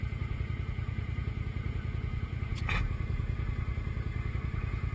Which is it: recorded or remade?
remade